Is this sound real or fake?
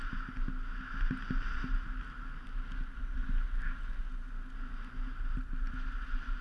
real